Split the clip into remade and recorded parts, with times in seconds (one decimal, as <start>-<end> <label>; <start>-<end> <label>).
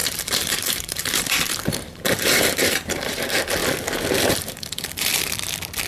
0.0-3.6 remade; 3.6-4.3 recorded; 4.3-5.1 remade; 5.1-5.9 recorded